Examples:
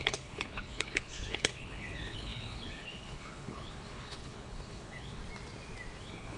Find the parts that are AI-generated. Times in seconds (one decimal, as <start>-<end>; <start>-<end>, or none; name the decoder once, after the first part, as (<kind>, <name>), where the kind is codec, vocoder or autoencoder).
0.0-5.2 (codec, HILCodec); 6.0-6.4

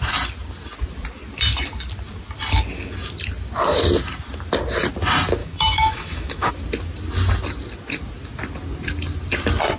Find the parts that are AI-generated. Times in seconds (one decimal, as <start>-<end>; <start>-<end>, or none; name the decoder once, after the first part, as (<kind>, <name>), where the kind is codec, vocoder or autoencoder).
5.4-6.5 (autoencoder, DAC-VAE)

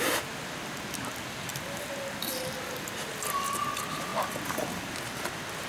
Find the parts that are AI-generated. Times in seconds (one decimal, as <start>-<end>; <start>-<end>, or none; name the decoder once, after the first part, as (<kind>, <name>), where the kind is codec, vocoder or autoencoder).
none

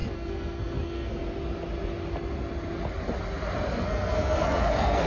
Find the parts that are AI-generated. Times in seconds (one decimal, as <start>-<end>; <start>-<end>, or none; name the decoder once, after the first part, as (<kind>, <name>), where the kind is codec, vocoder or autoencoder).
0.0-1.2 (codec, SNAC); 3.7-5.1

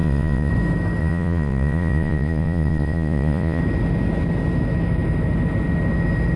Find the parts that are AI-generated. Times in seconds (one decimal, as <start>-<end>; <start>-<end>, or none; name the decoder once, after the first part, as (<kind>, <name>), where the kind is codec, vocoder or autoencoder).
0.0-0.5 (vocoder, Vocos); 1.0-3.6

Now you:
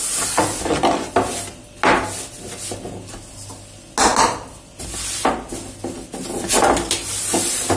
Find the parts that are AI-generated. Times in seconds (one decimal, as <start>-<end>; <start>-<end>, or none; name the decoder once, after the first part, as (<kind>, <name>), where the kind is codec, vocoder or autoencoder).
none

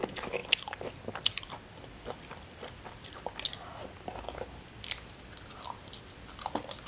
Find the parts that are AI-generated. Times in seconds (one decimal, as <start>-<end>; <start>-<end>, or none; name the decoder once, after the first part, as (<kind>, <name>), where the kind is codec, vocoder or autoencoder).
none

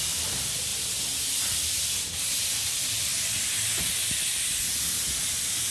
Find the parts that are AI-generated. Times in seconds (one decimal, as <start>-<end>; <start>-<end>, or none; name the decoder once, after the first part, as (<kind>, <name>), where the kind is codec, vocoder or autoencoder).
0.0-0.7 (vocoder, BigVGAN v2); 1.2-3.1; 5.3-5.7